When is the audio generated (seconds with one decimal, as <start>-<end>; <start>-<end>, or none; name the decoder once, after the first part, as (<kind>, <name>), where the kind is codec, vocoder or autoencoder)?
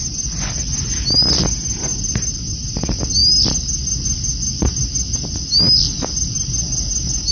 none